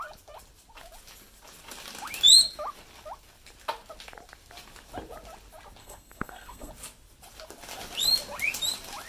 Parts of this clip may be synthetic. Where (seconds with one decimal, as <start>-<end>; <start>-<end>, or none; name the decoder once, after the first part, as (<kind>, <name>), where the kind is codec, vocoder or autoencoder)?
5.8-6.7 (codec, SNAC)